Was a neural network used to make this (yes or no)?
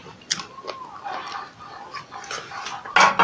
no